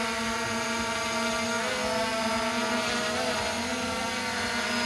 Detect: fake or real real